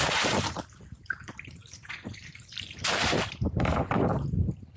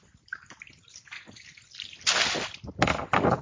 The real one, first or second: second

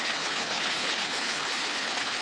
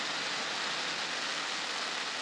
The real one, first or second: second